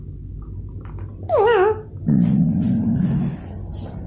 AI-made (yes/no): no